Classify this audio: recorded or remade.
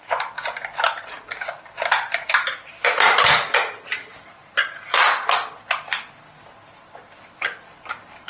recorded